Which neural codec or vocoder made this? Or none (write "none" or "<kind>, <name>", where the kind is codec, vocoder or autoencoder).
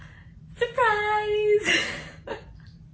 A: none